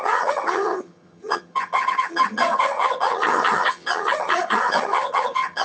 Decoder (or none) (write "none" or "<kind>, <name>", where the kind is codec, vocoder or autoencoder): vocoder, HiFi-GAN